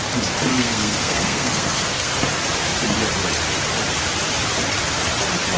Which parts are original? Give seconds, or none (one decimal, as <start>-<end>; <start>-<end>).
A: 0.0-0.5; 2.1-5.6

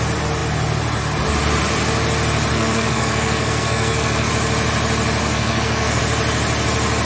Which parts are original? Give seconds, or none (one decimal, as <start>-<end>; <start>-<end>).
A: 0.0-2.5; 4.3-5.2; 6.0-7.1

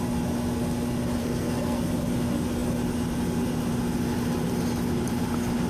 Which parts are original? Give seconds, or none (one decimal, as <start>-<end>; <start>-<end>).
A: 0.0-1.2; 1.9-5.7

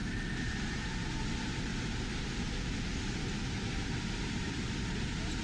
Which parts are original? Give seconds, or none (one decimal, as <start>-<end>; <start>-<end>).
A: 0.0-5.4